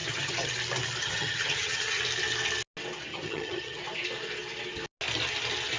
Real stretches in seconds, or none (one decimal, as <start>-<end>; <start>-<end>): 0.5-1.0; 2.0-3.1; 3.8-5.8